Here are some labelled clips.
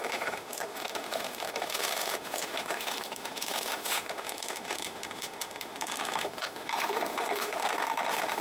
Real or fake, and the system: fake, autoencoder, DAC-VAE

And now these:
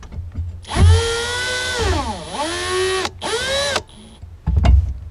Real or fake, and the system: real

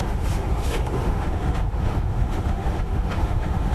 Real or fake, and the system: fake, autoencoder, DAC-VAE